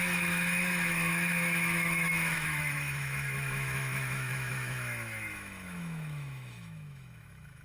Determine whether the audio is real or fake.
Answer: fake